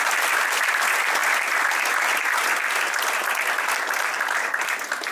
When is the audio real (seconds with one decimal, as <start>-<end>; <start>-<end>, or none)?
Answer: 0.0-5.1